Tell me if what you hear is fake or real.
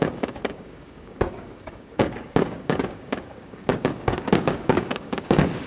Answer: fake